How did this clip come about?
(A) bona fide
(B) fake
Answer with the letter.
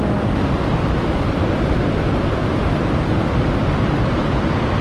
A